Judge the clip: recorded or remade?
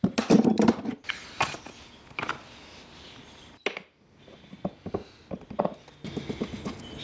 recorded